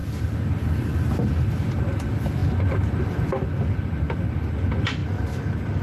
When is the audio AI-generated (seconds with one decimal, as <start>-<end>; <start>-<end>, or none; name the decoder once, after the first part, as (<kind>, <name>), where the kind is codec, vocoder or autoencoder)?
none